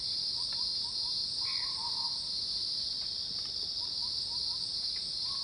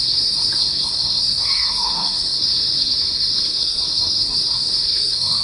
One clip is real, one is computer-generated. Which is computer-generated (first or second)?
second